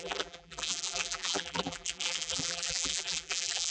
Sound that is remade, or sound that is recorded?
remade